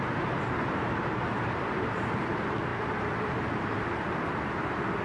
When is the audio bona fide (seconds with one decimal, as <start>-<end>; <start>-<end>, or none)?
none